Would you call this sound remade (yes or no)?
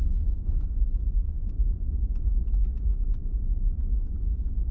yes